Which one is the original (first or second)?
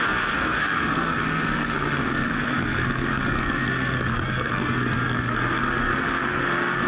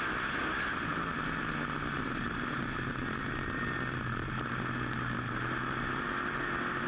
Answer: second